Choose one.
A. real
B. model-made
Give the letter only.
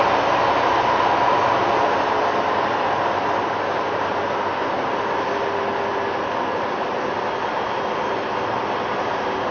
A